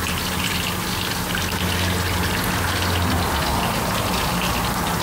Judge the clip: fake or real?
real